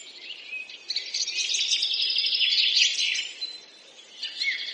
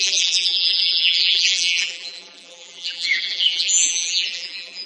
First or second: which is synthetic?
second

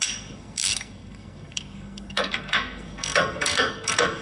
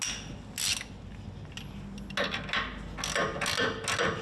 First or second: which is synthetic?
first